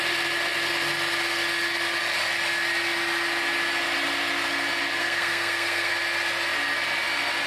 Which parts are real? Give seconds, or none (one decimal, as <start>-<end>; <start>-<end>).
0.0-5.0; 5.9-7.5